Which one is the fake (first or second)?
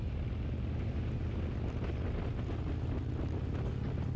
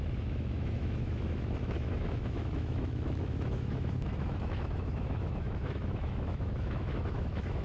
second